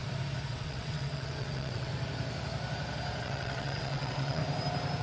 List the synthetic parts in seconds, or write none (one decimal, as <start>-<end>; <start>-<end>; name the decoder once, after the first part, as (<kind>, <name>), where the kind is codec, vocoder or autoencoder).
0.5-1.9 (vocoder, WaveNeXt); 3.2-4.4